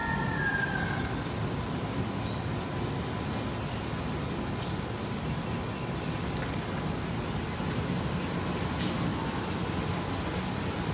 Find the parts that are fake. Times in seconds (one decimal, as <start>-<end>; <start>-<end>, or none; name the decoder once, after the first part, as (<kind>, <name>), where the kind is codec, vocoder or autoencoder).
none